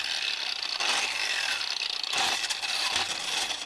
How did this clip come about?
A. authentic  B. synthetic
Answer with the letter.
A